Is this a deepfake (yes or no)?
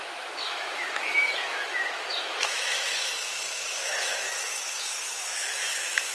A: yes